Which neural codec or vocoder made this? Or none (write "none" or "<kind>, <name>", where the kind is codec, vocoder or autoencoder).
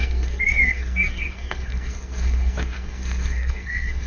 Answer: codec, SNAC